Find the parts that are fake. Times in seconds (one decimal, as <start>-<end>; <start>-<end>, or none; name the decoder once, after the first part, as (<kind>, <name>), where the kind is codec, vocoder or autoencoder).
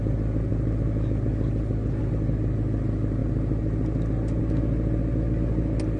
none